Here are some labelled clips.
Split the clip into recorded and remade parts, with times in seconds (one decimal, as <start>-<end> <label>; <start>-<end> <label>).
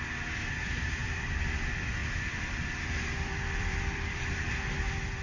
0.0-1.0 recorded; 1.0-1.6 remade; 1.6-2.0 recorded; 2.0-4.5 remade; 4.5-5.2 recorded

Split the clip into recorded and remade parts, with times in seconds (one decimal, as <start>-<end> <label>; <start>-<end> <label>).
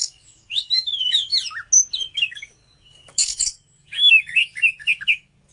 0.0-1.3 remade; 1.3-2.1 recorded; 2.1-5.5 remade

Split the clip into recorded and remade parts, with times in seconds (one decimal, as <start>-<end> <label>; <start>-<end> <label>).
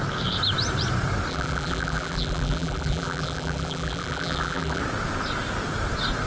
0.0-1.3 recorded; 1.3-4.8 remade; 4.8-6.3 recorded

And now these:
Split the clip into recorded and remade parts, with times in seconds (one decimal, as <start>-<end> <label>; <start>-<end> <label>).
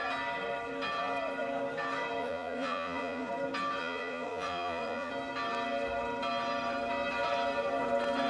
0.0-2.2 recorded; 2.2-3.3 remade; 3.3-3.8 recorded; 3.8-5.1 remade; 5.1-8.3 recorded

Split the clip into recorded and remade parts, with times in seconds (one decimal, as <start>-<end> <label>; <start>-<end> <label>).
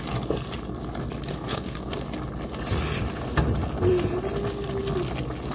0.0-1.3 recorded; 1.3-1.9 remade; 1.9-5.5 recorded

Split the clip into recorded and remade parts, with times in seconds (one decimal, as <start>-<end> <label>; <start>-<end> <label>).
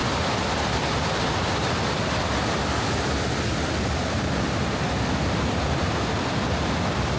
0.0-7.2 recorded